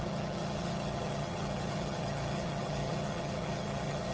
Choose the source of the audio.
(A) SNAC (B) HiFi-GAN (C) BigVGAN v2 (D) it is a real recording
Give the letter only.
B